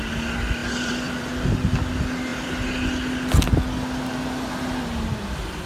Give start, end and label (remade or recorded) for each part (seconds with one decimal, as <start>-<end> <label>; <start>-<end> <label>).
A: 0.0-0.6 recorded; 0.6-1.5 remade; 1.5-5.7 recorded